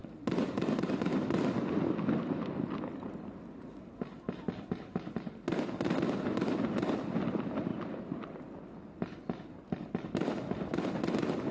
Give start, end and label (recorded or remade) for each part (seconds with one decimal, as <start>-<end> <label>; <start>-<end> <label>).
0.0-11.5 recorded